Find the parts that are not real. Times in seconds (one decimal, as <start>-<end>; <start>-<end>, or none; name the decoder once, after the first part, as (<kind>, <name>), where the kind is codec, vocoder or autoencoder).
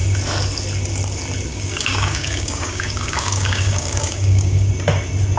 1.5-4.7 (codec, DAC)